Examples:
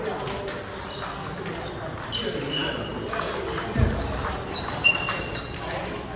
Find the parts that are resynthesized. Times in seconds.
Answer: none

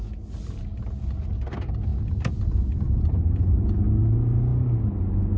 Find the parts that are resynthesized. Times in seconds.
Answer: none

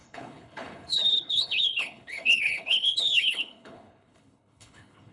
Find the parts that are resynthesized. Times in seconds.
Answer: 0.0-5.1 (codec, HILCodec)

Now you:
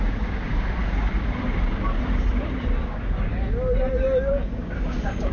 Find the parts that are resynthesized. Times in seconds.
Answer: 0.0-0.5 (codec, DAC); 2.8-3.3; 4.3-5.3

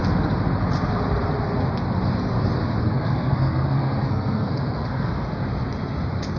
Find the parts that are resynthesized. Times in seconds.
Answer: 2.8-5.4 (codec, SNAC)